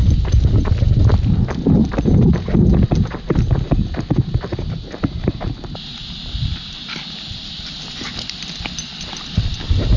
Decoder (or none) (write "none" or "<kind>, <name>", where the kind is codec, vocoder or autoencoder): none